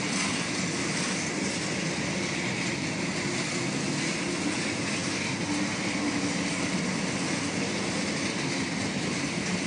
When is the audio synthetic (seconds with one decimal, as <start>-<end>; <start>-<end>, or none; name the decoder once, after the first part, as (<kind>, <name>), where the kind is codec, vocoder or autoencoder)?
none

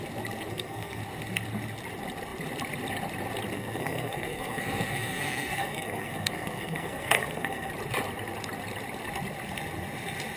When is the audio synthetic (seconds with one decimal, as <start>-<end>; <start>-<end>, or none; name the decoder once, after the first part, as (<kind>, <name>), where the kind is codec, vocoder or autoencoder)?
0.5-1.0 (codec, SNAC); 3.5-7.7

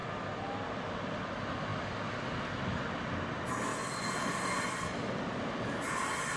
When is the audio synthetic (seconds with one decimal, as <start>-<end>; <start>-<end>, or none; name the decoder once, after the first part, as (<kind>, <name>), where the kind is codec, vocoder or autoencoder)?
none